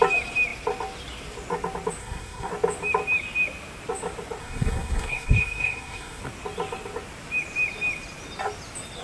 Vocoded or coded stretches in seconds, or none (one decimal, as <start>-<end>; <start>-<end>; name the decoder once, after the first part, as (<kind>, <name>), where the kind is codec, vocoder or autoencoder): 2.0-2.5 (codec, SNAC); 4.4-6.2